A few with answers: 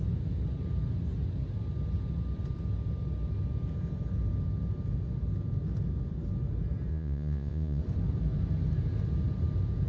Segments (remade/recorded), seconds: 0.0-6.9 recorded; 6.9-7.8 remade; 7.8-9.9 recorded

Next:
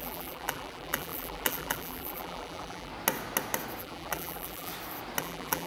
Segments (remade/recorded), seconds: 0.0-2.9 remade; 2.9-3.8 recorded; 3.8-4.7 remade; 4.7-5.2 recorded; 5.2-5.7 remade

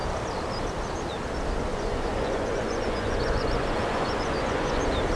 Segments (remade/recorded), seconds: 0.0-1.7 recorded; 1.7-4.8 remade; 4.8-5.2 recorded

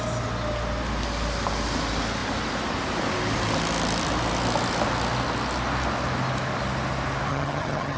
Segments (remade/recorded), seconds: 0.0-7.3 recorded; 7.3-8.0 remade